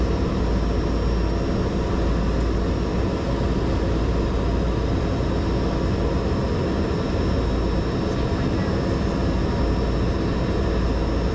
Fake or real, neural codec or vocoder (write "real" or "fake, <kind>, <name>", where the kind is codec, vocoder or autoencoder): real